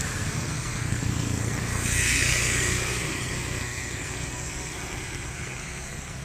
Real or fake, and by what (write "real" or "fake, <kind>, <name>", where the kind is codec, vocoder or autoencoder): fake, codec, SNAC